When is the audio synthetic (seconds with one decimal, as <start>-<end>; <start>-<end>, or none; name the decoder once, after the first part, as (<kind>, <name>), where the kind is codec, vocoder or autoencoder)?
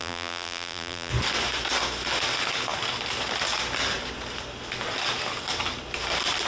0.0-1.1 (vocoder, BigVGAN v2)